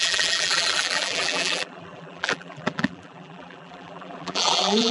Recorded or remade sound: remade